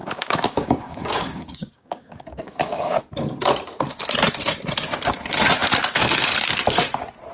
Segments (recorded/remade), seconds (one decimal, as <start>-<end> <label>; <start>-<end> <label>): 0.0-3.0 remade; 3.0-7.3 recorded